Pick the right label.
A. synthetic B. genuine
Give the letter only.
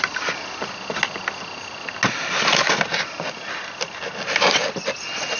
B